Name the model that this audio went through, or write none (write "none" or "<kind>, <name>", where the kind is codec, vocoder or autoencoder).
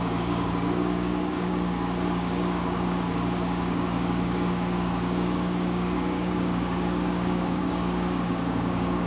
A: codec, DAC